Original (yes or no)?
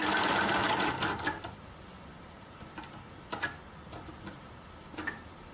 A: yes